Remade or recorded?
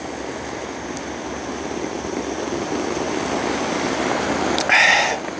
recorded